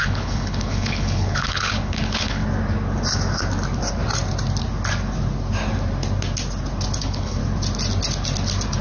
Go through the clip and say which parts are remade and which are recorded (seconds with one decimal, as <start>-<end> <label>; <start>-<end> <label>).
0.0-2.4 remade; 2.4-7.0 recorded; 7.0-7.4 remade; 7.4-8.8 recorded